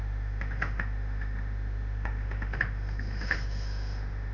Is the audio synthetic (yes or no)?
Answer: yes